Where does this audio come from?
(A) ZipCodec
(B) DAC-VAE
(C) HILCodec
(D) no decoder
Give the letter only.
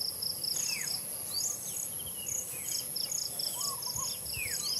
D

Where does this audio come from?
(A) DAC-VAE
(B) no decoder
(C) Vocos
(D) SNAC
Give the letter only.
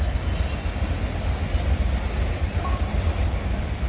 B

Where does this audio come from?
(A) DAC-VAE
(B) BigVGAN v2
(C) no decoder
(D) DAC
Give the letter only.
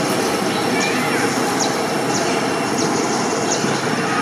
C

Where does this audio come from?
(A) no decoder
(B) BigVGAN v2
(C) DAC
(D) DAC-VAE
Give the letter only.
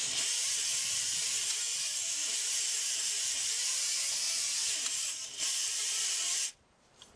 A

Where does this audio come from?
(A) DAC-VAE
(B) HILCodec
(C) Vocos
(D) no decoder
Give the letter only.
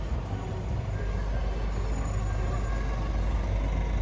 D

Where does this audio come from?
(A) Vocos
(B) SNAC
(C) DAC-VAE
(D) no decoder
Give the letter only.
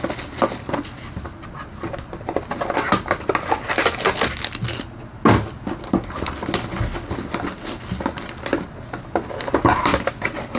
D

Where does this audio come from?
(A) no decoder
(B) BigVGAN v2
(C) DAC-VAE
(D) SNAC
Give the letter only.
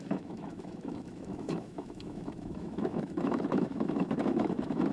C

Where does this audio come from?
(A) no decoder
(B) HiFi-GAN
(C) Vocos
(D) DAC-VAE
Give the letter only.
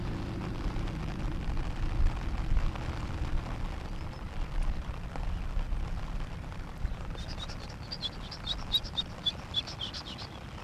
A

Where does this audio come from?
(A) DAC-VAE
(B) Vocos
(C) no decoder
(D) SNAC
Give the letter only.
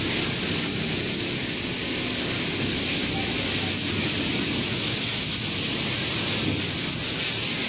C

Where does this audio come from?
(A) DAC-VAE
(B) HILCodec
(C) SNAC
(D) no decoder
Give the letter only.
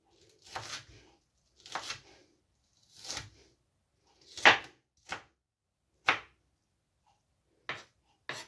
D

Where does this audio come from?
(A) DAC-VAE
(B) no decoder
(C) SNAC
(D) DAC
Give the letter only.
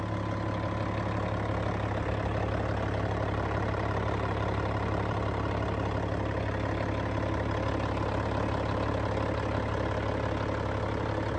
B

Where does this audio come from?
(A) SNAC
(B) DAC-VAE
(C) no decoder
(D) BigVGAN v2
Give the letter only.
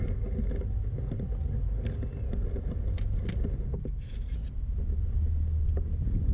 C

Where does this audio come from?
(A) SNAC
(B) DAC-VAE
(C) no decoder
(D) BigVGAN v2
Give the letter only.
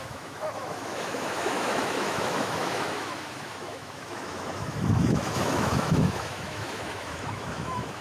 B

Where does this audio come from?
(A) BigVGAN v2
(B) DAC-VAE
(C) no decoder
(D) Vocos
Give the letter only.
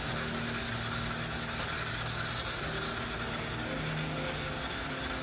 C